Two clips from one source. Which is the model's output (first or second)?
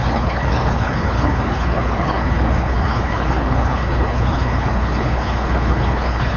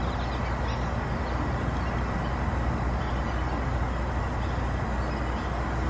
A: first